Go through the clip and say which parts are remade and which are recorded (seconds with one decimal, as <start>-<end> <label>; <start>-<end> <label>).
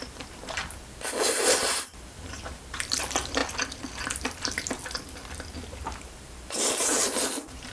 0.0-0.6 remade; 0.6-1.2 recorded; 1.2-3.4 remade; 3.4-5.9 recorded; 5.9-7.7 remade